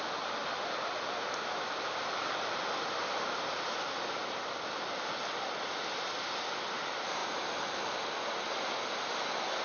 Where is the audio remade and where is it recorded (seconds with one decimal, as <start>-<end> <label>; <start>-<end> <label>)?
0.0-9.6 recorded